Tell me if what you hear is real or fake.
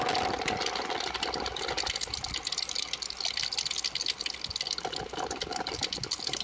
real